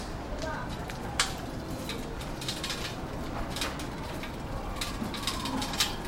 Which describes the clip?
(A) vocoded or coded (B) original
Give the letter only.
B